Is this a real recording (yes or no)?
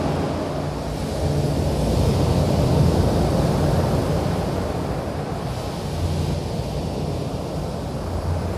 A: yes